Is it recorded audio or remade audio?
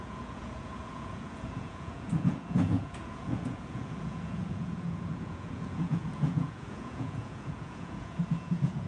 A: remade